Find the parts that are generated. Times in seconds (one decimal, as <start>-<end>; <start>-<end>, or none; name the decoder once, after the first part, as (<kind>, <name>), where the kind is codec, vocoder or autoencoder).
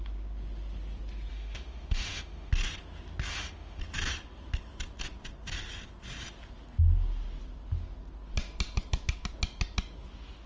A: 1.3-2.5 (autoencoder, DAC-VAE); 3.3-3.8